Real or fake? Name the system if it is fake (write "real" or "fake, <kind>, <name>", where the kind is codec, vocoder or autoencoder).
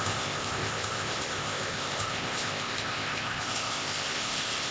fake, codec, ZipCodec